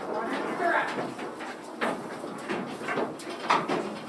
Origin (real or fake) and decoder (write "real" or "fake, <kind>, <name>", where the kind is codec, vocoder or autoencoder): real